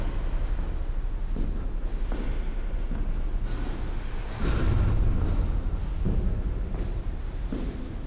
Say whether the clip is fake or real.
real